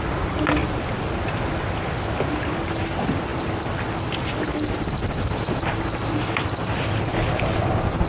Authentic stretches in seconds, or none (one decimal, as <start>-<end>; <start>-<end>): 0.0-8.1